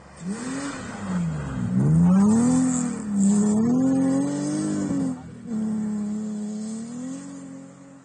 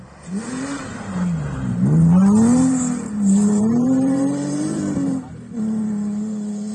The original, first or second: first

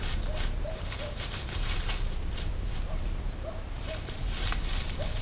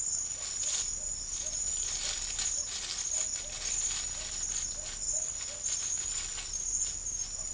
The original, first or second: second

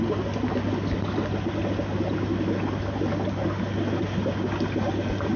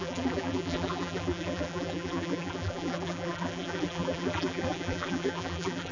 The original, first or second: first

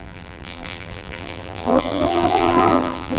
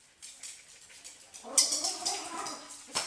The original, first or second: second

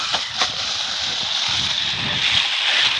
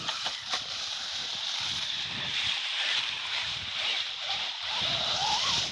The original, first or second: first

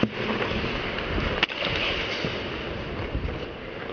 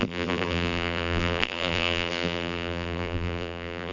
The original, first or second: first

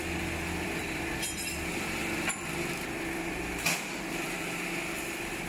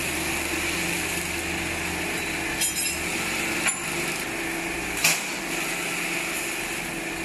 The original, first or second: second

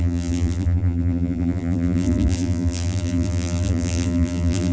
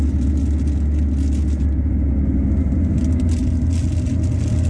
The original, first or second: second